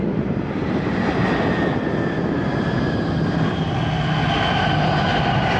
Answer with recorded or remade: recorded